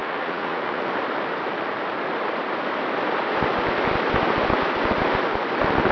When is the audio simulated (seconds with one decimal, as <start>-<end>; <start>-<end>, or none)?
0.0-0.8